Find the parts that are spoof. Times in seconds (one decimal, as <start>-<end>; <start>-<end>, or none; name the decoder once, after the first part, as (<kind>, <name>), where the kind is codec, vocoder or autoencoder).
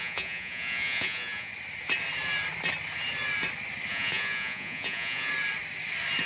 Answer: 0.0-1.5 (vocoder, Vocos); 3.9-5.3